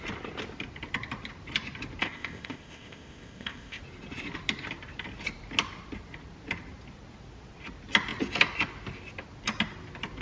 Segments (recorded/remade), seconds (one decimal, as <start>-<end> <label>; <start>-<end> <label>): 0.0-2.0 recorded; 2.0-3.8 remade; 3.8-10.2 recorded